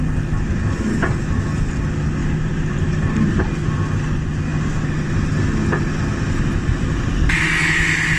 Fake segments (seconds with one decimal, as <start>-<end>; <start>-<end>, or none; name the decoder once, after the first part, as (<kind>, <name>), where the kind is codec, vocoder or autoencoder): 2.2-3.4 (vocoder, BigVGAN v2)